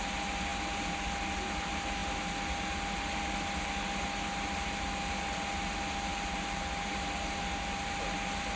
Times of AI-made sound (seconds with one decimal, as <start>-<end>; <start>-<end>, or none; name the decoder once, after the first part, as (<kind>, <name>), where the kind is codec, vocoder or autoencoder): none